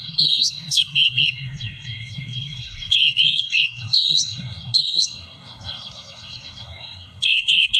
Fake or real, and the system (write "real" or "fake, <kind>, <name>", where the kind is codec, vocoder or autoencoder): fake, codec, SNAC